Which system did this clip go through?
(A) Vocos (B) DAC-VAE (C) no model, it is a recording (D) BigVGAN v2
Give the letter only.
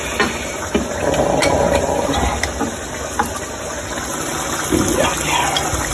C